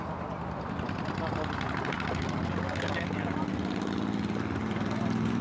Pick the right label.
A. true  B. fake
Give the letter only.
A